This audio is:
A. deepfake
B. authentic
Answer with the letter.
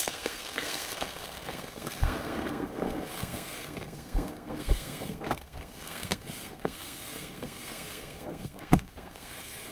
A